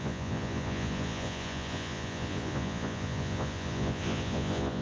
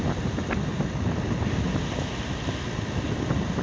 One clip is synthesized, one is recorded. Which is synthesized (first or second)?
first